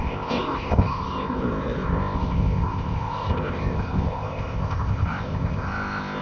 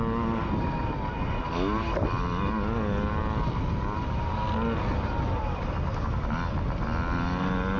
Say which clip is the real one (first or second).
second